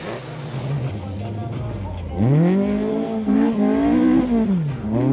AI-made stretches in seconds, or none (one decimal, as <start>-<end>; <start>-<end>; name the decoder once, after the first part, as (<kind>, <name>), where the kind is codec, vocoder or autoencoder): 2.9-3.5 (codec, SNAC)